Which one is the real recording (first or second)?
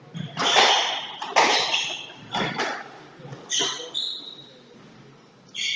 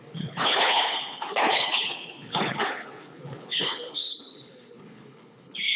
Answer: first